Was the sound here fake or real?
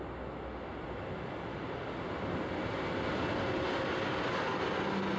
real